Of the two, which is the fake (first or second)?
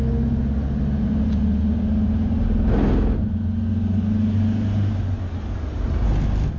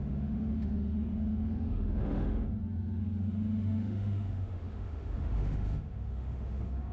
second